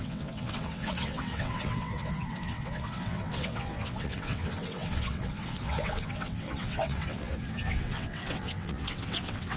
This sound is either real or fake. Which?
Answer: fake